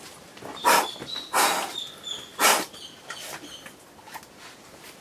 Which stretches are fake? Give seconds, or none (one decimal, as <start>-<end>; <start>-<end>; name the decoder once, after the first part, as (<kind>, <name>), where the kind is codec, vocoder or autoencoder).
none